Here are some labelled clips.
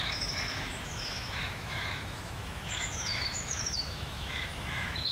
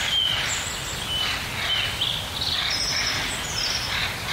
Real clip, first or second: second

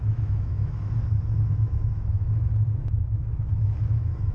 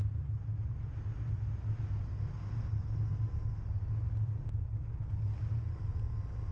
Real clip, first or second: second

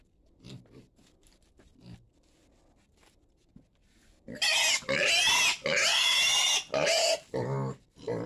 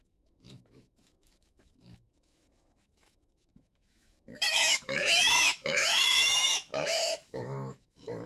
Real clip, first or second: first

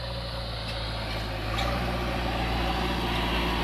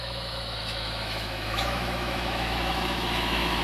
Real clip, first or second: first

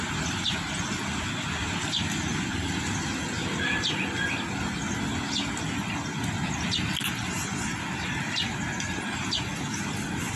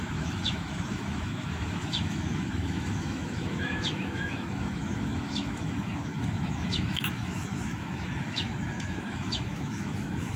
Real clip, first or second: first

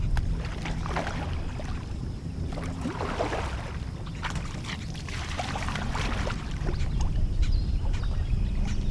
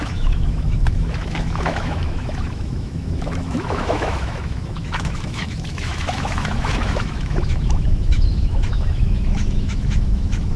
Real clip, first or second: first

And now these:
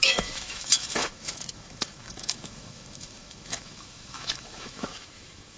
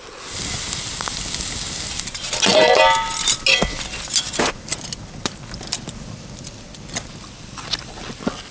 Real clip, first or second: second